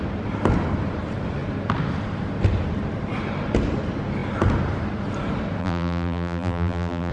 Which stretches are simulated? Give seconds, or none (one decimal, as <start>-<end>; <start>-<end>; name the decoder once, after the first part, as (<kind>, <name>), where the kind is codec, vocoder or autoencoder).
5.6-7.1 (vocoder, BigVGAN v2)